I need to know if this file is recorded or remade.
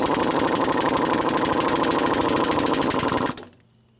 recorded